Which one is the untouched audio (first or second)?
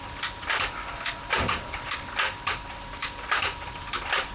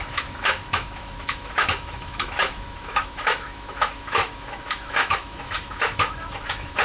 first